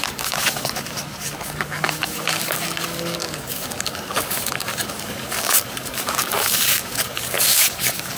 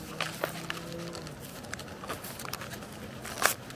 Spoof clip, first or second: first